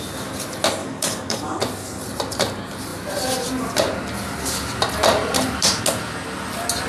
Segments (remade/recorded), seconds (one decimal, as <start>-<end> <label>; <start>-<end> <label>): 0.0-0.8 recorded; 0.8-1.6 remade; 1.6-6.9 recorded